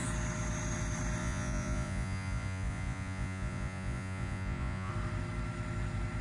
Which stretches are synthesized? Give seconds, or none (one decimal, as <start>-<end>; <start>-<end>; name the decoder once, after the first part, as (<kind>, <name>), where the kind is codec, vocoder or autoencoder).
1.2-4.9 (vocoder, Vocos)